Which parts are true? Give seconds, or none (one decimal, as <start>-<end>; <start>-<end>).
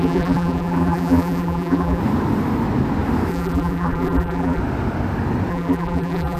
2.0-3.3; 4.6-5.5